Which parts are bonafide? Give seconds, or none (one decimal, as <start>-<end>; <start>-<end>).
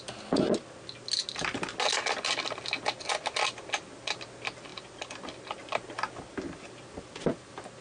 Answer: 0.0-7.8